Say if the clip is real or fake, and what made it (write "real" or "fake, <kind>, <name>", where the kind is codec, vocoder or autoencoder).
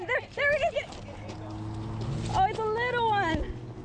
real